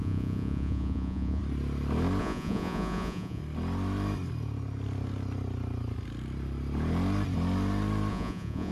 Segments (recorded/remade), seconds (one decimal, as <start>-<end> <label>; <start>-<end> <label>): 0.0-1.4 remade; 1.4-2.2 recorded; 2.2-3.4 remade; 3.4-8.1 recorded; 8.1-8.7 remade